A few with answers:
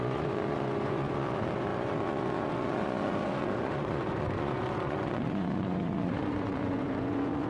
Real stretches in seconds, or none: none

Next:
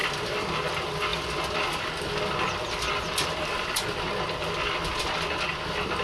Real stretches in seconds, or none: 0.0-6.0

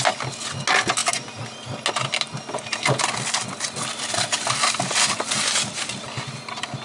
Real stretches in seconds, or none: 0.0-6.8

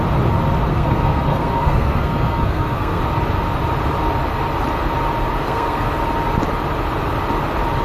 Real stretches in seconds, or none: 0.0-0.7; 3.0-5.4; 5.9-7.8